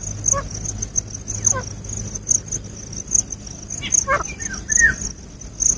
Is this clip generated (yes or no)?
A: no